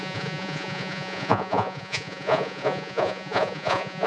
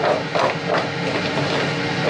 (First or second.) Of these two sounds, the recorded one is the second